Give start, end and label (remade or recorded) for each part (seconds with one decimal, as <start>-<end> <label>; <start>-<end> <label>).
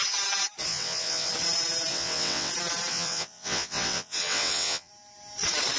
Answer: 0.0-0.7 recorded; 0.7-1.3 remade; 1.3-1.9 recorded; 1.9-2.5 remade; 2.5-2.9 recorded; 2.9-4.9 remade; 4.9-5.8 recorded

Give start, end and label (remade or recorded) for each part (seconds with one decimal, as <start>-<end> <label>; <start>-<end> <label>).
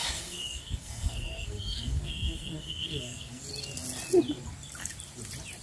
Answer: 0.0-3.4 remade; 3.4-5.6 recorded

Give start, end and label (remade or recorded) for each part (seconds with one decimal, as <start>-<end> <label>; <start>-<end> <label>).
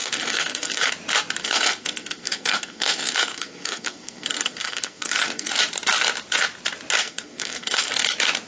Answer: 0.0-0.9 remade; 0.9-1.4 recorded; 1.4-5.5 remade; 5.5-7.0 recorded; 7.0-7.9 remade; 7.9-8.5 recorded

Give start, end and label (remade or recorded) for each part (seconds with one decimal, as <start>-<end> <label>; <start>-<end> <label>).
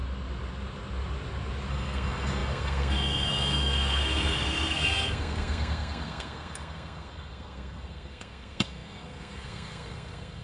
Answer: 0.0-1.7 recorded; 1.7-10.4 remade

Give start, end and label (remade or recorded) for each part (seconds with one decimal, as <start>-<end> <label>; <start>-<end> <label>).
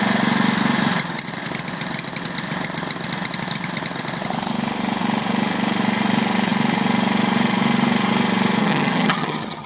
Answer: 0.0-8.6 recorded; 8.6-9.7 remade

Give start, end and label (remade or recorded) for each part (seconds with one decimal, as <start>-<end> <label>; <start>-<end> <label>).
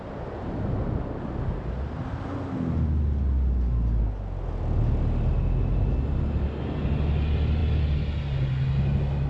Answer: 0.0-9.3 recorded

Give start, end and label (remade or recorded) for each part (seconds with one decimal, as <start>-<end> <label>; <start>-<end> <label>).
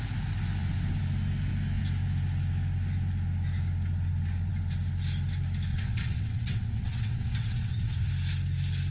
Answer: 0.0-5.7 recorded; 5.7-8.1 remade; 8.1-8.9 recorded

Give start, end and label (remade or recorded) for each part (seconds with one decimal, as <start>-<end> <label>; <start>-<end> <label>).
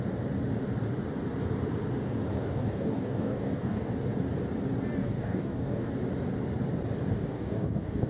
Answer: 0.0-2.3 recorded; 2.3-3.9 remade; 3.9-5.0 recorded; 5.0-5.9 remade; 5.9-7.1 recorded; 7.1-8.1 remade